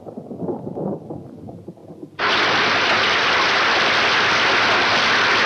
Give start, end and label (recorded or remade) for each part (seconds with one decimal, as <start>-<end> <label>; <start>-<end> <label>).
0.0-5.5 recorded